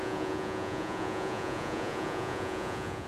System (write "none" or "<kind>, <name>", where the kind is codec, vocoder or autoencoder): vocoder, Vocos